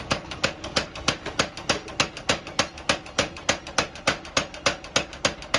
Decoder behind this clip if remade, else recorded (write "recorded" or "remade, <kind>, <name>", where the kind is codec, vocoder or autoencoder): recorded